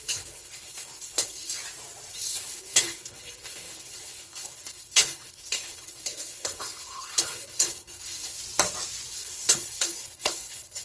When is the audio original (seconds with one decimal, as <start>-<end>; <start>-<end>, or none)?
1.6-2.1; 8.4-9.1